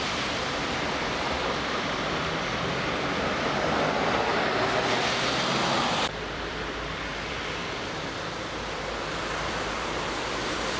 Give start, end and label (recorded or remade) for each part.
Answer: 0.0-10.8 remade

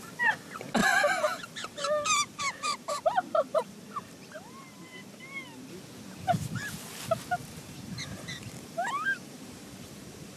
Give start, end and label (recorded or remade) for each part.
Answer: 0.0-0.8 recorded; 0.8-5.7 remade; 5.7-7.4 recorded; 7.4-10.4 remade

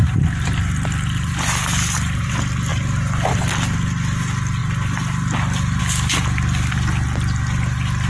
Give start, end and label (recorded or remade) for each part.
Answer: 0.0-2.3 remade; 2.3-2.7 recorded; 2.7-3.5 remade; 3.5-8.1 recorded

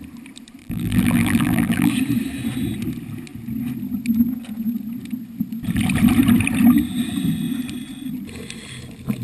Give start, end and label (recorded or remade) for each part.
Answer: 0.0-0.6 recorded; 0.6-1.9 remade; 1.9-9.2 recorded

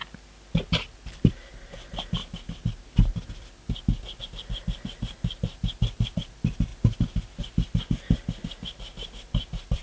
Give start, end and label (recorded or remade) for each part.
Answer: 0.0-2.2 remade; 2.2-4.2 recorded; 4.2-9.8 remade

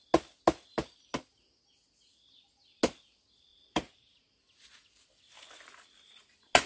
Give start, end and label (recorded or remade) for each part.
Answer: 0.0-3.5 recorded; 3.5-4.4 remade; 4.4-6.7 recorded

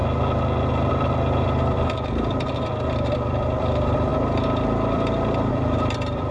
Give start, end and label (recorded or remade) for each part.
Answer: 0.0-0.9 recorded; 0.9-6.3 remade

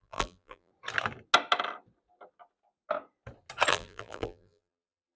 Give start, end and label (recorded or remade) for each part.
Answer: 0.0-0.7 remade; 0.7-3.7 recorded; 3.7-5.2 remade